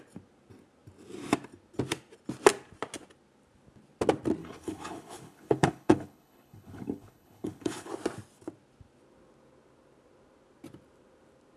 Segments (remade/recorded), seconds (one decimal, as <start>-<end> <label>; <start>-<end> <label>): 0.0-4.4 recorded; 4.4-7.9 remade; 7.9-11.6 recorded